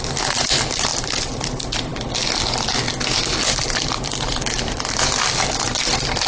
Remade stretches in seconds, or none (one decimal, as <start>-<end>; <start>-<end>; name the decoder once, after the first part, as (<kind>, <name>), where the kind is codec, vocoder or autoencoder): 0.9-1.5 (vocoder, BigVGAN v2); 3.6-5.5